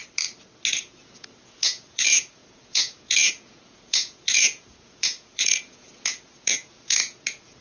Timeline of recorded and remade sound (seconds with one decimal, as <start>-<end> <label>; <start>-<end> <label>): 0.0-0.7 recorded; 0.7-7.6 remade